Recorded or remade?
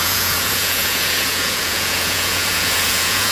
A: remade